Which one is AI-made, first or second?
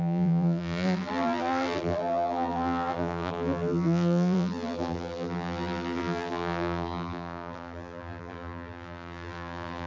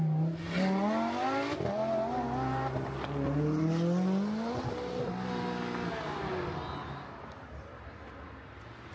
first